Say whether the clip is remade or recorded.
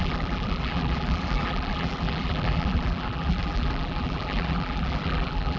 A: remade